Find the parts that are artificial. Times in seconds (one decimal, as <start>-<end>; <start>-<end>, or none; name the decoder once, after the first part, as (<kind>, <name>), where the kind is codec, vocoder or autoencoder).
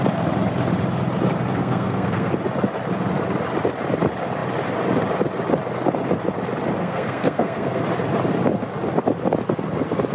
1.6-2.3 (codec, SNAC); 6.8-7.8